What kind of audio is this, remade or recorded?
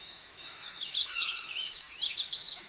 remade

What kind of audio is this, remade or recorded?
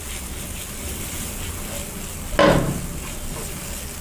recorded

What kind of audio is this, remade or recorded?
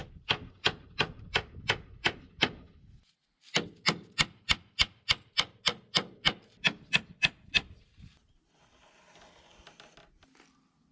recorded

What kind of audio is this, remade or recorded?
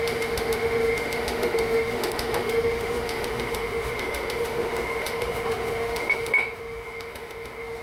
remade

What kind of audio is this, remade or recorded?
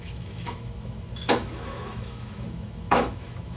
remade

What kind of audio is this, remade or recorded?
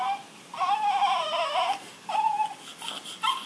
recorded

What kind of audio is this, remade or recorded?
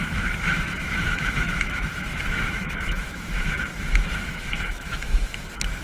remade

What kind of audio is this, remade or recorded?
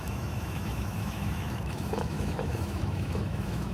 remade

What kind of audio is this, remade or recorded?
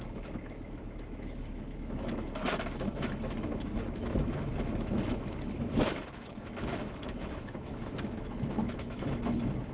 remade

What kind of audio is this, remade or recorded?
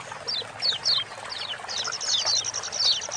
recorded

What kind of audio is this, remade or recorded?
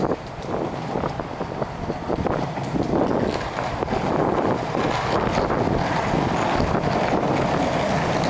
recorded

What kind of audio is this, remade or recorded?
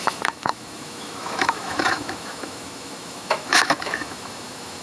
remade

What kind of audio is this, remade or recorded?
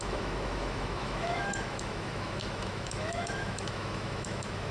remade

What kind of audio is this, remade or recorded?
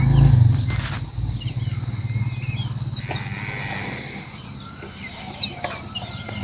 recorded